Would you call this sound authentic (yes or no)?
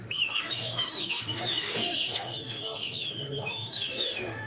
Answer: no